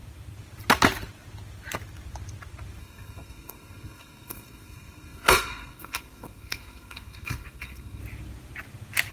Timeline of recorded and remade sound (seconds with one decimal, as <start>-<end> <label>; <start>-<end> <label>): 0.0-2.8 recorded; 2.8-8.0 remade; 8.0-9.1 recorded